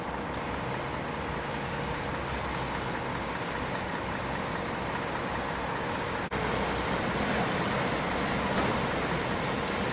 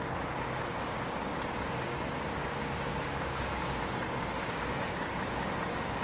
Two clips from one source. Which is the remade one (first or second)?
second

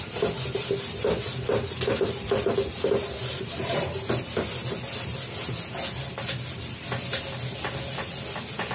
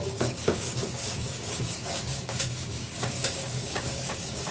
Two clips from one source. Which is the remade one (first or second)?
second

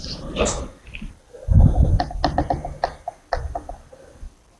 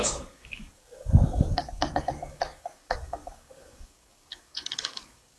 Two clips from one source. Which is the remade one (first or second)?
second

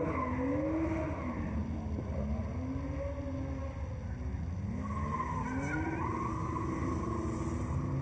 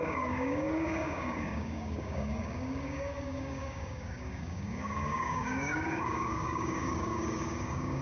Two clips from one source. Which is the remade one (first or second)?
second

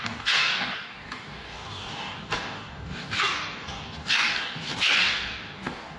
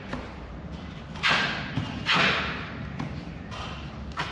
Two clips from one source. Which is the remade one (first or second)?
first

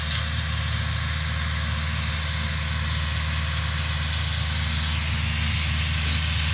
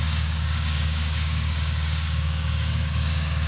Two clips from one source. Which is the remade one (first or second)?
second